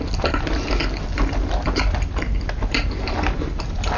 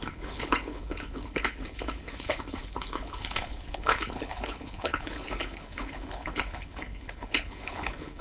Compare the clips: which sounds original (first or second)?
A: first